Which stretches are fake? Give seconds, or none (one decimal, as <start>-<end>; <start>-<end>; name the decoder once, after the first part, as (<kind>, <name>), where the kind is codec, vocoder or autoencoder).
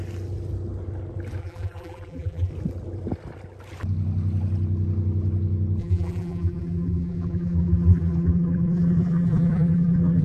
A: 1.4-2.5 (vocoder, BigVGAN v2); 5.8-10.2